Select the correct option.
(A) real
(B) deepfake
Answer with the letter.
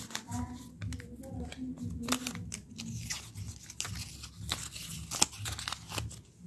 A